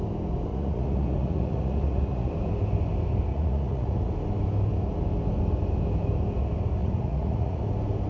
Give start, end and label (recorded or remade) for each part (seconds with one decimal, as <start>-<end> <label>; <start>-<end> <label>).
0.0-0.5 recorded; 0.5-2.3 remade; 2.3-3.3 recorded; 3.3-4.1 remade; 4.1-6.8 recorded; 6.8-7.6 remade; 7.6-8.1 recorded